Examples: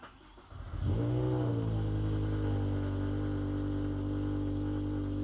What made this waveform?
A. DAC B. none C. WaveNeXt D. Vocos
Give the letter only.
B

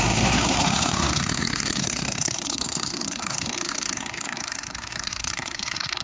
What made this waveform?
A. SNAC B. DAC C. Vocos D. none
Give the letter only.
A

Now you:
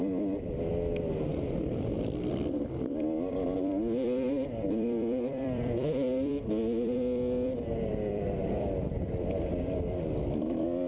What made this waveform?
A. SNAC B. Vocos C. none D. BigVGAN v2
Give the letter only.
D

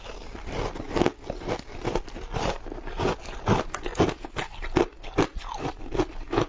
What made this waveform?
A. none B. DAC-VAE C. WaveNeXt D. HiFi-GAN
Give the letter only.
A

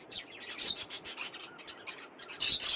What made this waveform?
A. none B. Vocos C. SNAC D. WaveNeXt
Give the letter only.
A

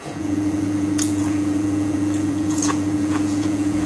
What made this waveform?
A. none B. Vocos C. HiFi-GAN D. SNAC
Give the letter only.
B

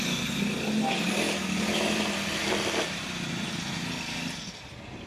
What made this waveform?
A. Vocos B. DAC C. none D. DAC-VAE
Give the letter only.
C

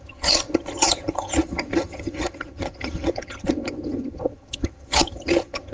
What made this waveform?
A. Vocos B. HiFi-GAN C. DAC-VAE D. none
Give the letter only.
B